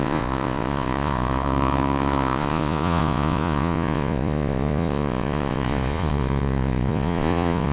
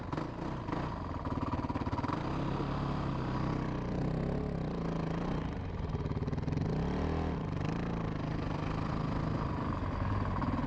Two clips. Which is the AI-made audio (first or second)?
first